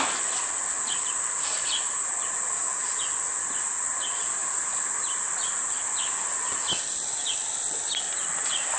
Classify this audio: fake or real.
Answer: real